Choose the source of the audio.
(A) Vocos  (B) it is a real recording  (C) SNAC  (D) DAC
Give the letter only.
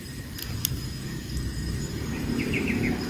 B